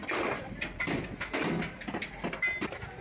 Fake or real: real